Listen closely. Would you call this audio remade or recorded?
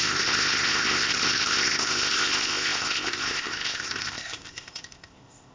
remade